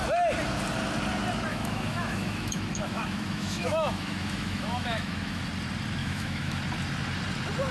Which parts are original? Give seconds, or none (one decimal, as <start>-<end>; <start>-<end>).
0.0-1.5; 5.4-6.0; 6.6-7.7